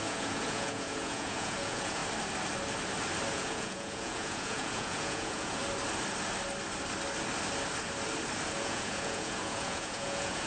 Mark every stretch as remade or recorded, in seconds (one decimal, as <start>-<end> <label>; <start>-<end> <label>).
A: 0.0-2.0 remade; 2.0-3.3 recorded; 3.3-5.6 remade; 5.6-8.6 recorded; 8.6-10.5 remade